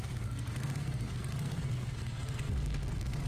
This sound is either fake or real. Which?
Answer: fake